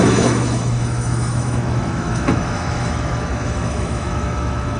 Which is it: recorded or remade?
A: remade